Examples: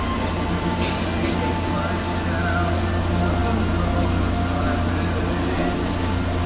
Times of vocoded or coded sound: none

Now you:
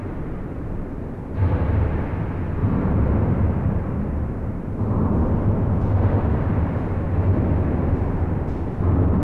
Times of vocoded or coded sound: 0.0-1.7 (vocoder, BigVGAN v2); 2.6-5.3; 7.8-8.4

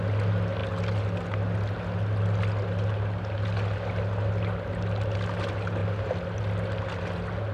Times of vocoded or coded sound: none